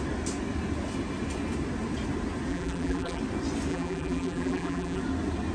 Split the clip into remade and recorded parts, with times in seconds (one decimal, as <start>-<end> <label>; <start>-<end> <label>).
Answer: 0.0-2.5 recorded; 2.5-3.2 remade; 3.2-3.7 recorded; 3.7-5.0 remade; 5.0-5.5 recorded